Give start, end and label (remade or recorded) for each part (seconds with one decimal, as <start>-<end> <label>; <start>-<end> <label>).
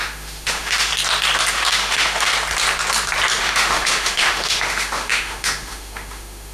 0.0-0.9 remade; 0.9-1.5 recorded; 1.5-2.3 remade; 2.3-3.4 recorded; 3.4-6.5 remade